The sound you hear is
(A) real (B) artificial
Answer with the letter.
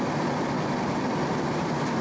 A